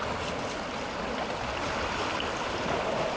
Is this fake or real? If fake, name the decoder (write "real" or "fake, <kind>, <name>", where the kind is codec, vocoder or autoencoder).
real